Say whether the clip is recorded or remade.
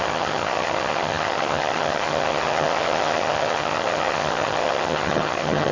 remade